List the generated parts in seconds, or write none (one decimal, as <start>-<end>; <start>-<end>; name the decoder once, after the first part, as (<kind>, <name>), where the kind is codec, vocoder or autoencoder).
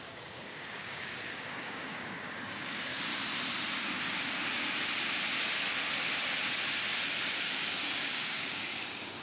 0.0-3.1 (codec, DAC); 7.4-9.2